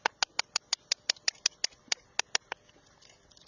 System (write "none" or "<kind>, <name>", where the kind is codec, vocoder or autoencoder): none